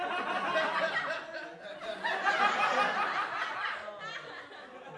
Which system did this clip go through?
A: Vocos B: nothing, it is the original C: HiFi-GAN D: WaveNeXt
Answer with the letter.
B